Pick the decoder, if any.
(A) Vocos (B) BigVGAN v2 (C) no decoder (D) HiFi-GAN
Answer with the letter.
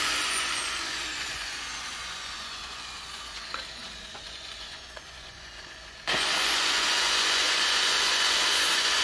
A